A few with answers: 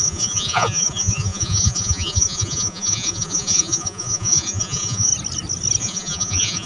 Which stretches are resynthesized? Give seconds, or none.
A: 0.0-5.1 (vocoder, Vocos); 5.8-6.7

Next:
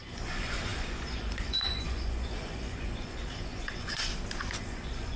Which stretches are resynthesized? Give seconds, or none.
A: 0.0-4.1 (vocoder, Vocos); 4.6-5.2

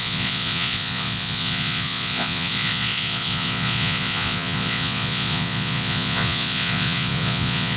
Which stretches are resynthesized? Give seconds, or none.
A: 0.0-7.8 (vocoder, Vocos)